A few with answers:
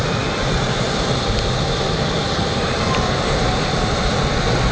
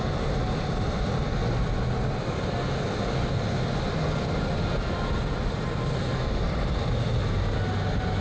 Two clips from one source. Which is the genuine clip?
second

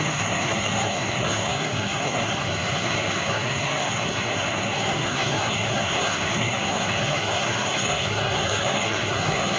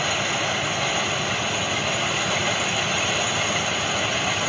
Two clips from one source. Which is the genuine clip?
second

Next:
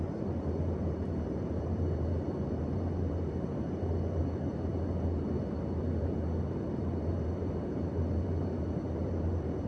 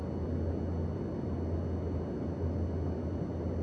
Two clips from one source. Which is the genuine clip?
second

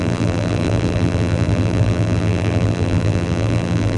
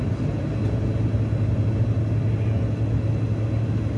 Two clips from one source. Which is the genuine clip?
second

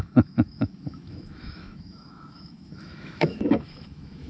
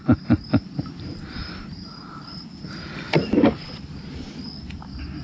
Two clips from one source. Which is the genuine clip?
second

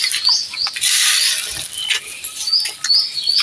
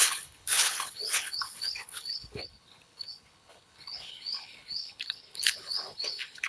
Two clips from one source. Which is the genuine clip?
first